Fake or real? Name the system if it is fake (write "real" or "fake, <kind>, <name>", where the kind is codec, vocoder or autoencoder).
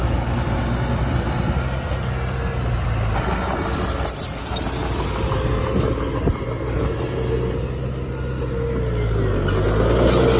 real